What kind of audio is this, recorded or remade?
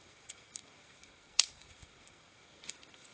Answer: remade